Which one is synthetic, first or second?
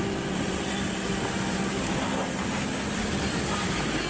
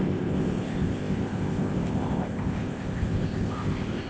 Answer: second